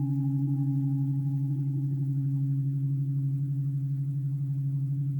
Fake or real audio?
fake